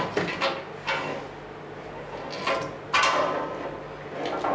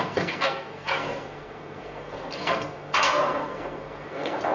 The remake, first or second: second